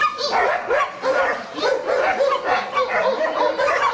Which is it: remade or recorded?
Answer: recorded